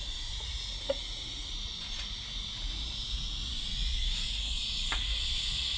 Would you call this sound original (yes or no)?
no